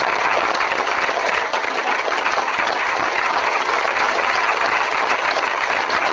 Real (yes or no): no